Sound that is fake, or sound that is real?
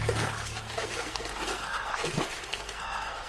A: fake